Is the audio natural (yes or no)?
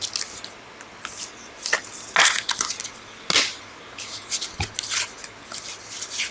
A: yes